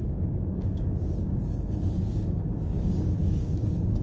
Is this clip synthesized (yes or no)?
yes